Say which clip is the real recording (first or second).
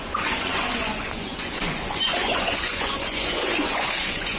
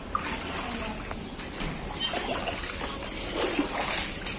second